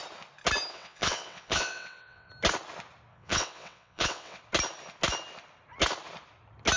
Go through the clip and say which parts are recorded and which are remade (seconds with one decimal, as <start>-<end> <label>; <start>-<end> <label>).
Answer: 0.0-0.7 recorded; 0.7-2.3 remade; 2.3-3.1 recorded; 3.1-4.4 remade; 4.4-6.8 recorded